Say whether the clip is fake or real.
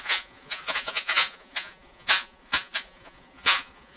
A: fake